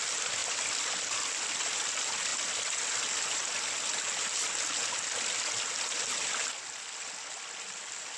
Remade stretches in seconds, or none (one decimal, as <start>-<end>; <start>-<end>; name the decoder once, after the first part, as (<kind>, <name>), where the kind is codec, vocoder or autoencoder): 0.4-1.0 (vocoder, BigVGAN v2)